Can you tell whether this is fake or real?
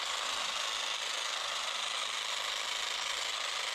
real